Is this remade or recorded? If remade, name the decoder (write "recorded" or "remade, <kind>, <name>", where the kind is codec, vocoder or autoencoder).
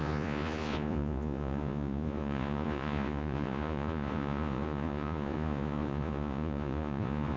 remade, vocoder, Vocos